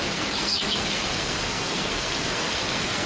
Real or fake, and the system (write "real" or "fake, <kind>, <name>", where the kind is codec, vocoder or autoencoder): fake, codec, SNAC